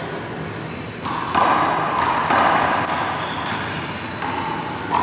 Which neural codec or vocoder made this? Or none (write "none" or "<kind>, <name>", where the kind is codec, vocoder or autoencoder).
none